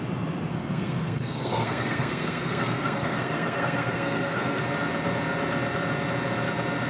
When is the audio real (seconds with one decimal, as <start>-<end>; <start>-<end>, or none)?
0.0-0.5; 4.6-6.9